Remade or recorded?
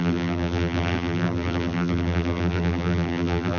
remade